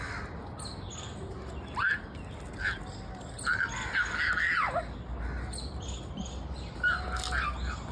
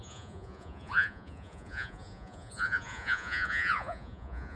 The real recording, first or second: first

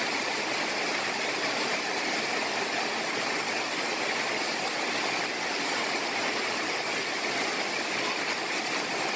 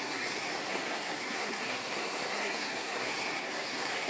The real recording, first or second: first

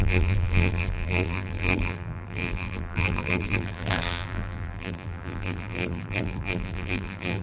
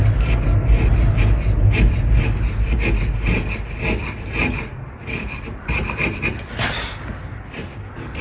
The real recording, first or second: second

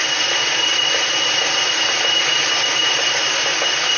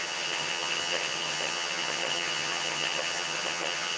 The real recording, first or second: first